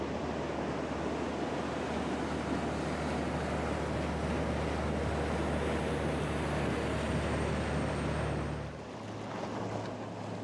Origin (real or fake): real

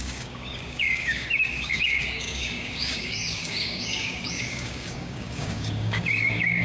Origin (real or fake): fake